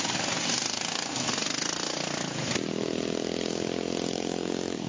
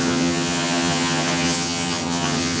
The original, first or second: first